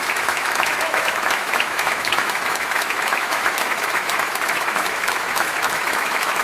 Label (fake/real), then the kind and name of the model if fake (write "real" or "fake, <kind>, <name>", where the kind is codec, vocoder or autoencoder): fake, autoencoder, DAC-VAE